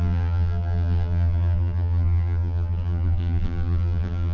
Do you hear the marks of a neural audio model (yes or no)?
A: yes